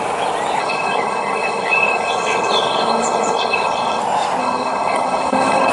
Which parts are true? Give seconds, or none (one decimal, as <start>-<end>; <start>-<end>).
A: 0.0-0.6; 4.0-4.4